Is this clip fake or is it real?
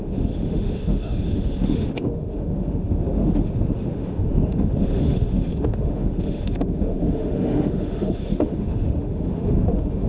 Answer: fake